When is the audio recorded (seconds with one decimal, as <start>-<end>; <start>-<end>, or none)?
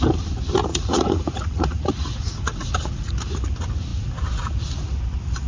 0.0-0.7; 3.1-5.5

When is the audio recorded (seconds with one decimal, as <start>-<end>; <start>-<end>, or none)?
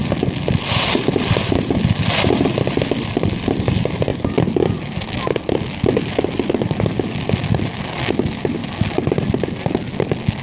0.0-10.4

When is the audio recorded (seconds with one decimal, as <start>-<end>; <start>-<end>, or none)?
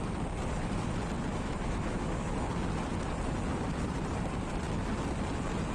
0.0-1.3; 2.4-5.7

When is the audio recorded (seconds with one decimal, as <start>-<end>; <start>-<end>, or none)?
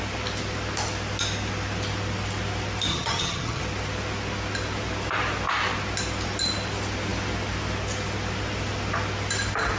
0.0-2.9; 3.6-9.8